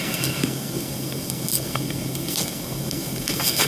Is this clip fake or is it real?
fake